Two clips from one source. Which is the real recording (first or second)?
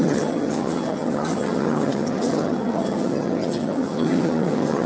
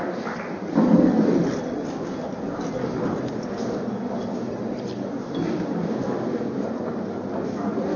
second